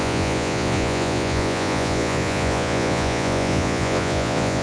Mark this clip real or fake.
fake